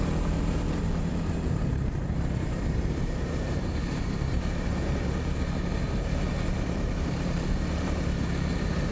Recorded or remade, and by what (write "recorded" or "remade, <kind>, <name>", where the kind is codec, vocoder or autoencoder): remade, vocoder, BigVGAN v2